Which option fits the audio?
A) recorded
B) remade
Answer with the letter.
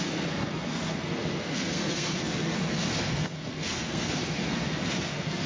B